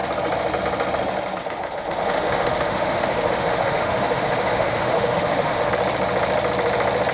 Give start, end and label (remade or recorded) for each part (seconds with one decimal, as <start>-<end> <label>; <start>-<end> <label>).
0.0-1.4 recorded; 1.4-5.7 remade; 5.7-7.1 recorded